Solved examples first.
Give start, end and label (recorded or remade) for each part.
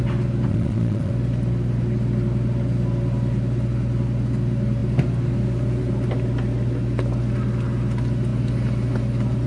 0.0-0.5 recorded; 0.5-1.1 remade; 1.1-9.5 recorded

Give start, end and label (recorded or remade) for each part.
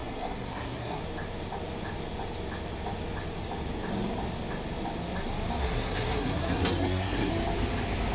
0.0-1.0 remade; 1.0-5.6 recorded; 5.6-7.3 remade; 7.3-8.1 recorded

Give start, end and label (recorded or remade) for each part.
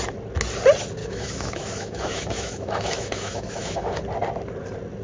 0.0-1.0 recorded; 1.0-4.0 remade; 4.0-5.0 recorded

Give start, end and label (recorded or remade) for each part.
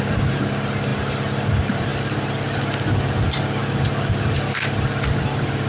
0.0-5.7 recorded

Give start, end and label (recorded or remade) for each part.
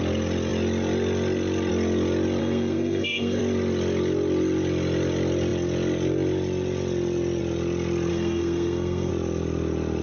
0.0-2.4 recorded; 2.4-3.4 remade; 3.4-8.1 recorded; 8.1-9.1 remade; 9.1-10.0 recorded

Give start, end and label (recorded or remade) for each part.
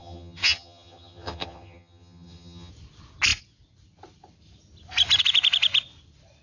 0.0-2.7 remade; 2.7-6.4 recorded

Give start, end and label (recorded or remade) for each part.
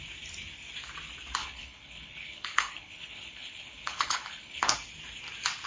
0.0-1.4 recorded; 1.4-4.6 remade; 4.6-5.7 recorded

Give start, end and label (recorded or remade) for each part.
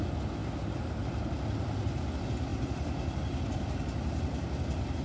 0.0-5.0 recorded